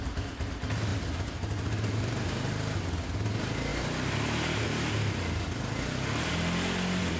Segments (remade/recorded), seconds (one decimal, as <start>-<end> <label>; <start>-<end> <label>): 0.0-7.2 recorded